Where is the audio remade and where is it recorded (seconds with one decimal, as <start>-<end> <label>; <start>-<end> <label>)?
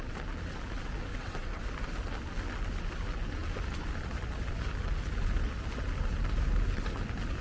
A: 0.0-1.1 recorded; 1.1-1.6 remade; 1.6-7.4 recorded